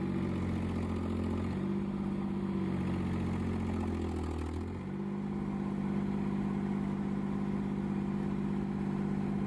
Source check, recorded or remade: recorded